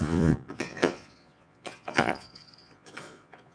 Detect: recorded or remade remade